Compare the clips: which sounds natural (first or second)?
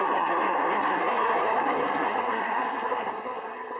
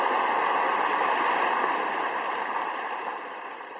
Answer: second